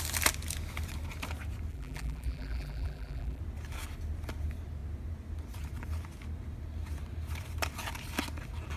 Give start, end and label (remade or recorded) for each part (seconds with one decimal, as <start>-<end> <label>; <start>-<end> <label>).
0.0-1.7 recorded; 1.7-3.4 remade; 3.4-8.8 recorded